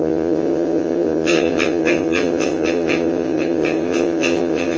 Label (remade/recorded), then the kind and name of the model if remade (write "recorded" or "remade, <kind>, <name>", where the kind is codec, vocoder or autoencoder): remade, vocoder, HiFi-GAN